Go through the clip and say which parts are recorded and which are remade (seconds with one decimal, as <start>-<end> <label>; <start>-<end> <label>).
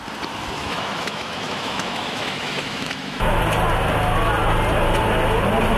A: 0.0-0.6 recorded; 0.6-3.4 remade; 3.4-5.8 recorded